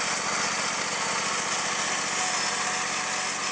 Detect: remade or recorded recorded